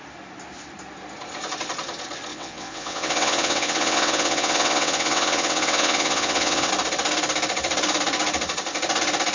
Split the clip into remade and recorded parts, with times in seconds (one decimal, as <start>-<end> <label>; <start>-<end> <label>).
0.0-2.3 recorded; 2.3-6.7 remade; 6.7-9.3 recorded